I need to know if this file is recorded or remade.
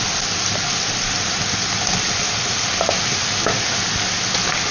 recorded